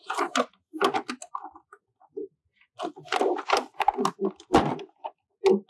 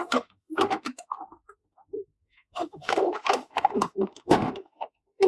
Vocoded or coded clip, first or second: second